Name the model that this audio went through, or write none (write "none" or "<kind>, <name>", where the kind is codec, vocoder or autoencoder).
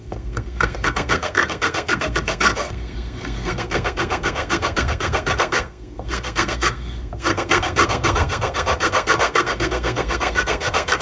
codec, SNAC